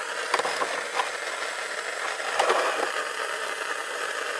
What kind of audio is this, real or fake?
real